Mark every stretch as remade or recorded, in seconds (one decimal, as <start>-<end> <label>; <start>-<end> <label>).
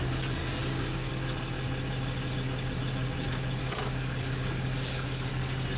0.0-0.4 recorded; 0.4-1.1 remade; 1.1-3.6 recorded; 3.6-5.3 remade; 5.3-5.8 recorded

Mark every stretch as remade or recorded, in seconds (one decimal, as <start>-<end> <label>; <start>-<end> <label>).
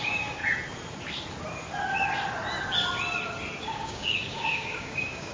0.0-0.4 remade; 0.4-3.6 recorded; 3.6-5.3 remade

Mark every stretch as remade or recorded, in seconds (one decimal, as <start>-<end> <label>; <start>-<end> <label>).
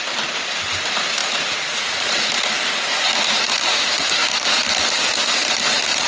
0.0-3.7 recorded; 3.7-4.5 remade; 4.5-6.1 recorded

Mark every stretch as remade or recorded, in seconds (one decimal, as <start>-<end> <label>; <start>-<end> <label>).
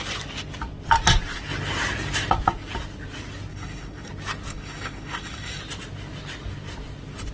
0.0-3.5 recorded; 3.5-4.1 remade; 4.1-4.5 recorded; 4.5-5.6 remade; 5.6-7.3 recorded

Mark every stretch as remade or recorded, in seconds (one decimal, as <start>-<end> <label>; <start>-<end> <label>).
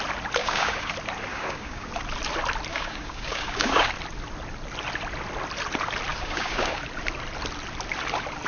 0.0-0.4 recorded; 0.4-0.9 remade; 0.9-1.3 recorded; 1.3-1.9 remade; 1.9-2.7 recorded; 2.7-3.9 remade; 3.9-6.1 recorded; 6.1-6.8 remade; 6.8-8.5 recorded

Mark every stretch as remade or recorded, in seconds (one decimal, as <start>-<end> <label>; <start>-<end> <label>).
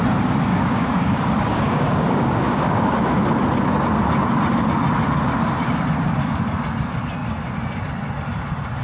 0.0-0.5 recorded; 0.5-3.0 remade; 3.0-8.8 recorded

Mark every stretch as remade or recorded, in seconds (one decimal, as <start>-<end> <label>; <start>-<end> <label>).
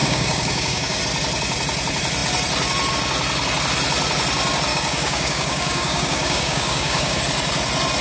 0.0-1.0 remade; 1.0-4.7 recorded; 4.7-7.2 remade; 7.2-8.0 recorded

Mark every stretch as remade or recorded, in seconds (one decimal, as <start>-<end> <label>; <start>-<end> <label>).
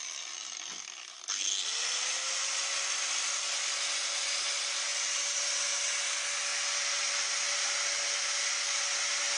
0.0-9.4 recorded